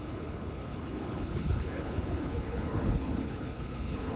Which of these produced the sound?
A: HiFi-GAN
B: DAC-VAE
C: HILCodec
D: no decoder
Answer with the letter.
C